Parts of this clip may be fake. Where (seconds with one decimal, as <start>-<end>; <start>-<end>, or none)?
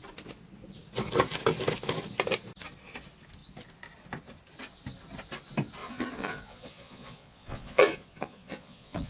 5.8-9.1